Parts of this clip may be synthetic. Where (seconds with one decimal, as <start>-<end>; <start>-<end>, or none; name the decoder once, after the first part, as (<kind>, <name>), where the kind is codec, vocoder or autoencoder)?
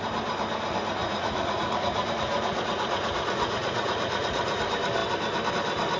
1.0-4.6 (vocoder, Vocos)